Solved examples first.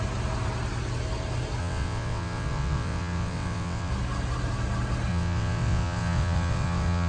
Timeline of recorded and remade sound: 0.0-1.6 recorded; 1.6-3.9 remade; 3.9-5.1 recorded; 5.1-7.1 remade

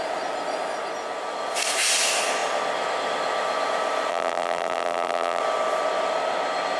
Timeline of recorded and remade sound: 0.0-4.1 recorded; 4.1-5.4 remade; 5.4-6.8 recorded

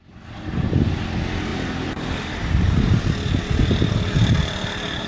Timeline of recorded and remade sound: 0.0-5.1 recorded

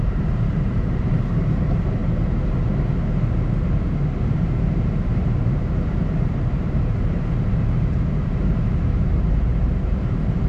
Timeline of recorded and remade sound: 0.0-2.0 remade; 2.0-4.2 recorded; 4.2-10.5 remade

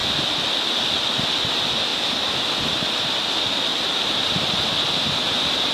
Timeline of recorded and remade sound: 0.0-1.9 recorded; 1.9-3.3 remade; 3.3-5.7 recorded